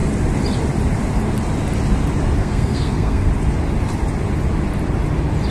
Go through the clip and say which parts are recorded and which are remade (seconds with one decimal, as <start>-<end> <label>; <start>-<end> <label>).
0.0-2.4 recorded; 2.4-3.3 remade; 3.3-5.5 recorded